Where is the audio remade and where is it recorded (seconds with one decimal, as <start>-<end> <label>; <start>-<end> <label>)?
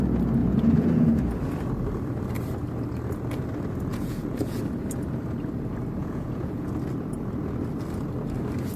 0.0-0.4 recorded; 0.4-1.2 remade; 1.2-3.9 recorded; 3.9-4.6 remade; 4.6-6.0 recorded; 6.0-6.7 remade; 6.7-8.8 recorded